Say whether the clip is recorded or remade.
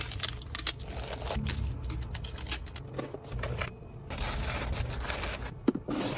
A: recorded